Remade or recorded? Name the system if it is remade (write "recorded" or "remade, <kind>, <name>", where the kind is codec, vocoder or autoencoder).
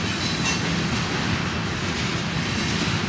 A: recorded